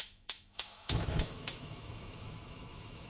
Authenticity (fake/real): fake